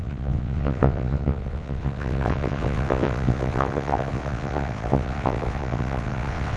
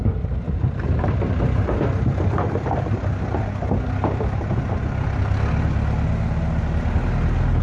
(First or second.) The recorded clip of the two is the second